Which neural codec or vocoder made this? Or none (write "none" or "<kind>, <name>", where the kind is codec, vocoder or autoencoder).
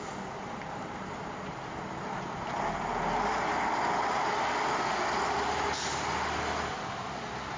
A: none